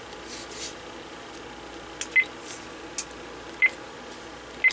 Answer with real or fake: real